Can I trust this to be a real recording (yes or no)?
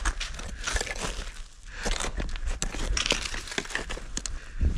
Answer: yes